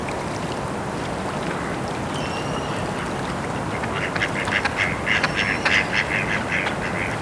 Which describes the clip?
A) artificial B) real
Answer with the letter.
B